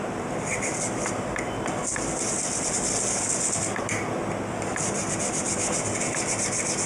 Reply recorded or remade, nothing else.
recorded